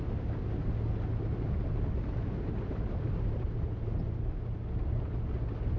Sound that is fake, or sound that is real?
real